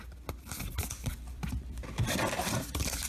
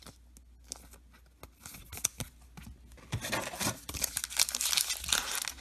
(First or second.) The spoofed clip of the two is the first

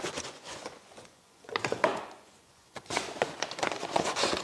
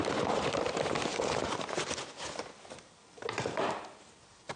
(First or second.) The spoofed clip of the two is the first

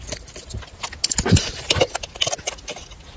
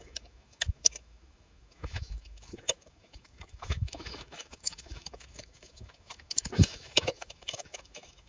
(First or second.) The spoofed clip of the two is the second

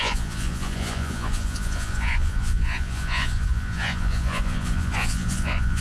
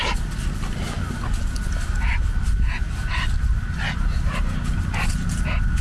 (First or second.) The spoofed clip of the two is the first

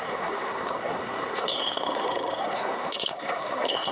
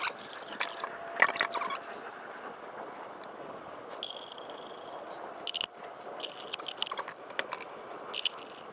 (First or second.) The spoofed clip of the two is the first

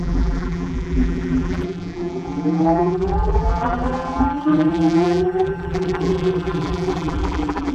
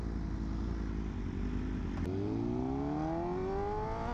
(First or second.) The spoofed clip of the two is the first